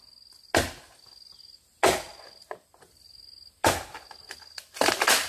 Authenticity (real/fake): real